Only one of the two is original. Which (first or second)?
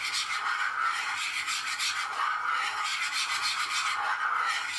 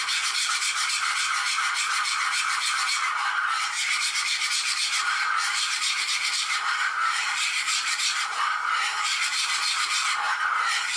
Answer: first